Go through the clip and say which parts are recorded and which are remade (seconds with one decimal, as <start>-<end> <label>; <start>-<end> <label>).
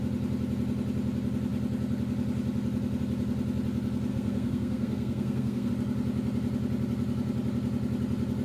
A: 0.0-4.1 recorded; 4.1-5.7 remade; 5.7-8.4 recorded